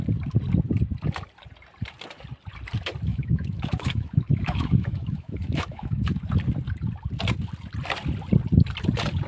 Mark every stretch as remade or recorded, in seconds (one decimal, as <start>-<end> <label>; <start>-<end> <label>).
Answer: 0.0-3.1 recorded; 3.1-6.2 remade; 6.2-9.3 recorded